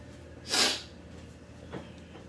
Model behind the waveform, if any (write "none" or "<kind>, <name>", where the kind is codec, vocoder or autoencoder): none